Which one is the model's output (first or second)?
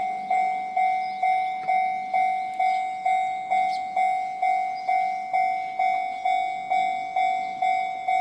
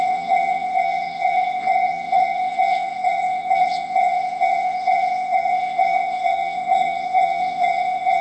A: second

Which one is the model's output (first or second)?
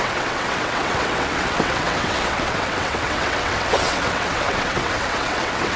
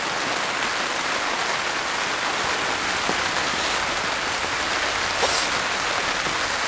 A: first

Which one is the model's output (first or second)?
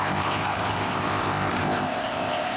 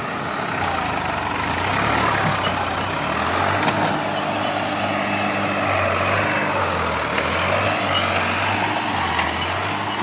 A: first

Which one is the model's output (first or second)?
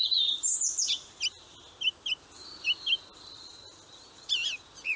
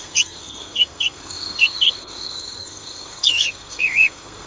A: second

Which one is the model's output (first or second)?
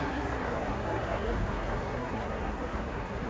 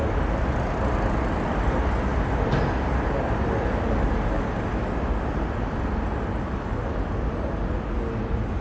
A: first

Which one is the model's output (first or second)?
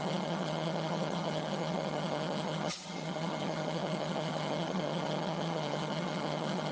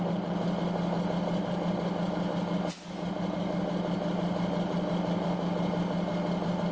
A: first